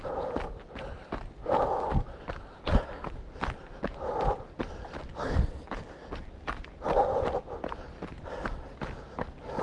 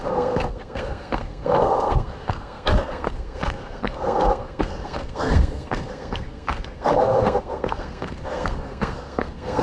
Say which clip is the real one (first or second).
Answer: first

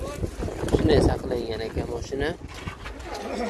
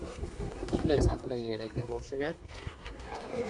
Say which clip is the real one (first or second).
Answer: first